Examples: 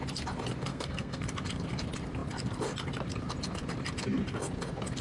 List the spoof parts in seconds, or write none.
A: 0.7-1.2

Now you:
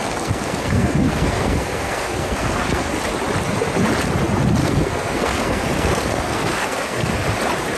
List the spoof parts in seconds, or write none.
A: 0.0-2.9; 4.6-7.1

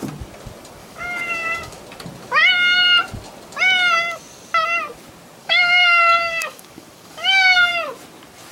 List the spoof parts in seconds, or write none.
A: 0.8-1.8; 5.4-7.7